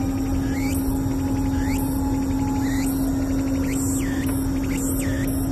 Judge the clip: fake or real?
real